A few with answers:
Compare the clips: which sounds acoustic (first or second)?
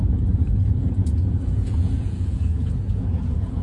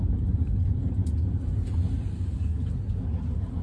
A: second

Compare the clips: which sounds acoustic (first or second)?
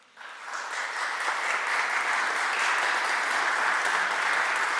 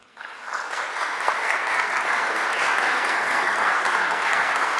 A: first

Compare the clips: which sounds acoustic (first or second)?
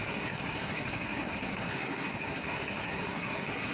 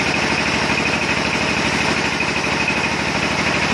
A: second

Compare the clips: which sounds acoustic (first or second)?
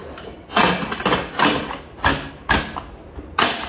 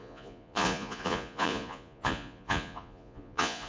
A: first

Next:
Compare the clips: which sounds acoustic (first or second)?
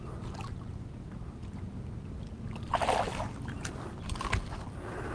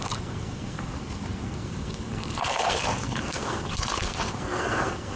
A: first